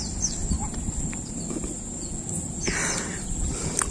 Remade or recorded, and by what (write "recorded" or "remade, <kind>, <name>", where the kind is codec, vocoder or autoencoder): recorded